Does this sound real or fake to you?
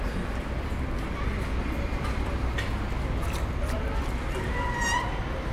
real